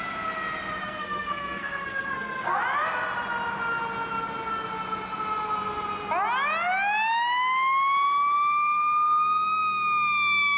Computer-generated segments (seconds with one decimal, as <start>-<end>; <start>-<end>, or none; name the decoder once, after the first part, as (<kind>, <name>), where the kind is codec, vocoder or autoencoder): 0.8-2.6 (codec, SNAC)